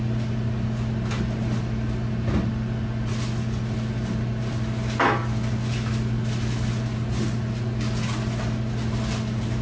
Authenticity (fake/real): real